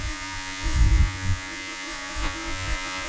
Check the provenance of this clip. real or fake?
fake